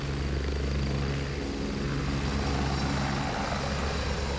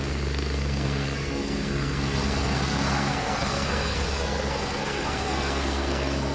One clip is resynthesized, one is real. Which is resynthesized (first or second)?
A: second